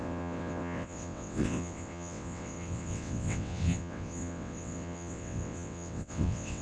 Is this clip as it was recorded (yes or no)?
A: no